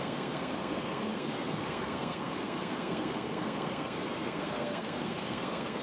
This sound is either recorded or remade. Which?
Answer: remade